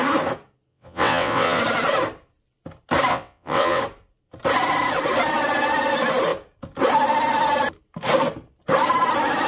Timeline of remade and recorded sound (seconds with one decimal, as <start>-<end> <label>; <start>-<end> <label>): 0.0-0.7 recorded; 0.7-1.6 remade; 1.6-3.1 recorded; 3.1-3.8 remade; 3.8-9.5 recorded